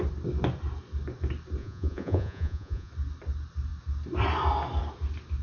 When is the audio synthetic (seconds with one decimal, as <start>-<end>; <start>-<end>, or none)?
1.6-2.9

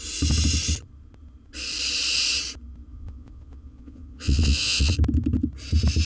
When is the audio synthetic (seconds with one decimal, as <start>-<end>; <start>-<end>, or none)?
2.9-4.9

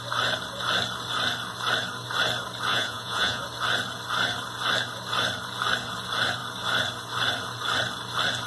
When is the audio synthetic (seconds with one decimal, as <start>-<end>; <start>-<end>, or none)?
2.7-3.4

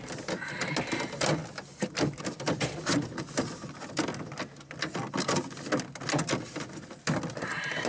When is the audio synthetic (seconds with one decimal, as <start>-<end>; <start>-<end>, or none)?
none

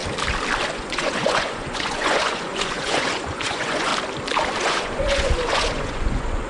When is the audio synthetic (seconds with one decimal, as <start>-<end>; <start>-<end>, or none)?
0.7-3.9; 4.6-6.5

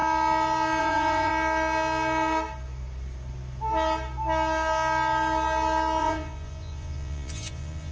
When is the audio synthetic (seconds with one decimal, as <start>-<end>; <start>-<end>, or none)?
0.8-1.3; 6.0-7.9